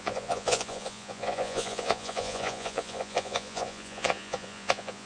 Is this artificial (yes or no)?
yes